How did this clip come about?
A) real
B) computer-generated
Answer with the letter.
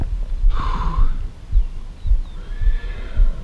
A